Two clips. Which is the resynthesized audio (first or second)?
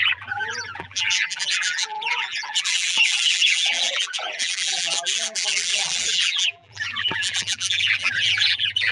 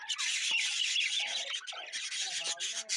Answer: first